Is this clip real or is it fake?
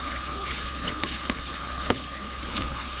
fake